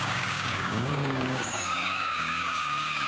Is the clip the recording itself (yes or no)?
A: no